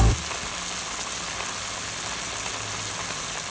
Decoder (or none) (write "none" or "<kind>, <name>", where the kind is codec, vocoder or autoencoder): none